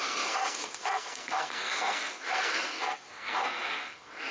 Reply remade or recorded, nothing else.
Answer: remade